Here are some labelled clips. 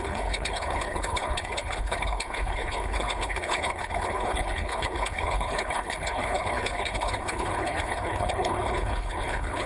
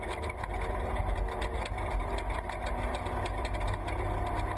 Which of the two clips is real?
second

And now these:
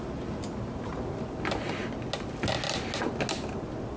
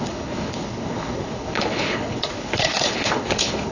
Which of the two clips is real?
first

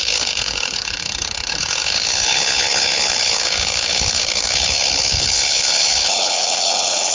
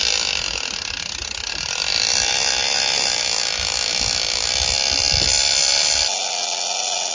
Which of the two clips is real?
second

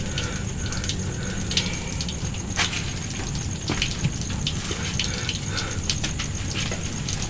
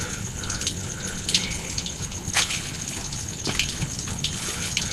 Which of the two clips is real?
first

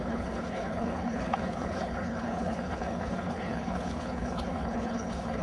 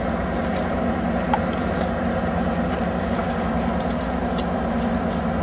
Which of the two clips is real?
second